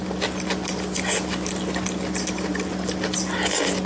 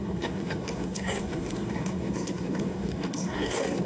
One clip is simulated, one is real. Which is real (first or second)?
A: first